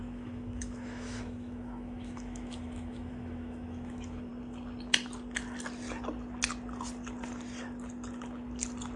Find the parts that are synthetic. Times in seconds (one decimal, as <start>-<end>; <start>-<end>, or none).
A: 0.0-4.3